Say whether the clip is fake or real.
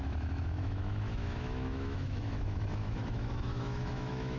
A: fake